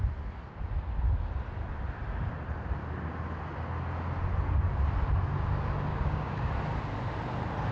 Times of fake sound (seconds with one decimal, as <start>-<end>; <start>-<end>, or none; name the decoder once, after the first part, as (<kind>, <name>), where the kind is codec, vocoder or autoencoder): 5.9-6.5 (codec, DAC)